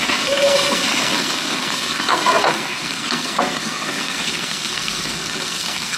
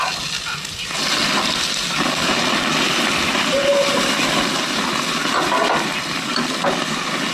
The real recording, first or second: second